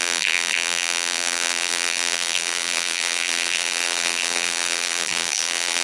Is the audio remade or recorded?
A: remade